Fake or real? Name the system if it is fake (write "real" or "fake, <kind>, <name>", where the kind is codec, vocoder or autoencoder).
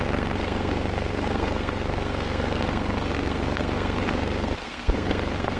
fake, codec, SNAC